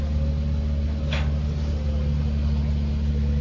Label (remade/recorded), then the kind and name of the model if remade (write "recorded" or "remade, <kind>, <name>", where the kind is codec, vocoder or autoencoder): recorded